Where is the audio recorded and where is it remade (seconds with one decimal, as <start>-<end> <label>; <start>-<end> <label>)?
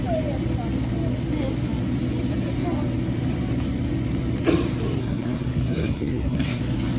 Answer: 0.0-5.0 recorded; 5.0-6.6 remade; 6.6-7.0 recorded